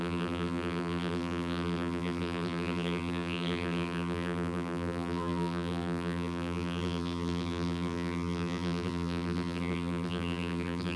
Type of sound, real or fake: fake